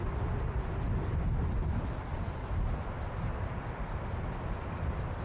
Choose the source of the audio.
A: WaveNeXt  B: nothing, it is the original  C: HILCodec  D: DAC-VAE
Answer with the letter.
B